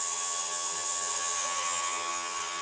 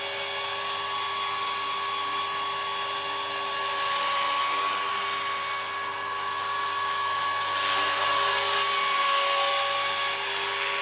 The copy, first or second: first